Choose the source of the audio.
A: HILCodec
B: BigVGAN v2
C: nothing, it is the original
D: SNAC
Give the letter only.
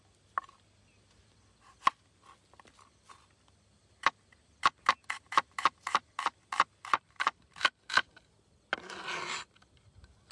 C